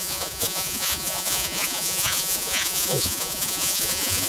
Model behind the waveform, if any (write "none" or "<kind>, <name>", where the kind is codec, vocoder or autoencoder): vocoder, Vocos